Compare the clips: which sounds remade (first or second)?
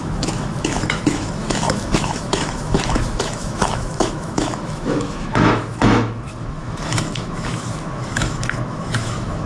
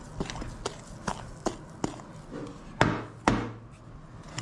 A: first